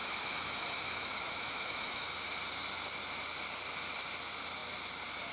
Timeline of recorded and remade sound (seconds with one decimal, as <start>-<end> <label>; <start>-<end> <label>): 0.0-2.1 remade; 2.1-5.3 recorded